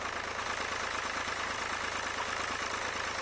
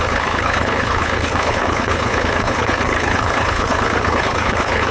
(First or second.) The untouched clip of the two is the first